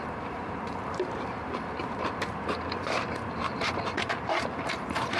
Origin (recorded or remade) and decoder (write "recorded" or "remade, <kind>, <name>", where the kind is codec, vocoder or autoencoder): remade, vocoder, BigVGAN v2